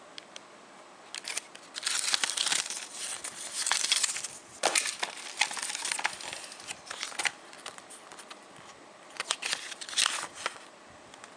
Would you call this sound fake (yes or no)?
no